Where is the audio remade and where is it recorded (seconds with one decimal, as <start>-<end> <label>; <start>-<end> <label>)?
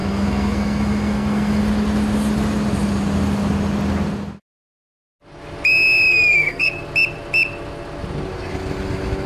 0.0-1.6 remade; 1.6-6.1 recorded; 6.1-6.7 remade; 6.7-9.3 recorded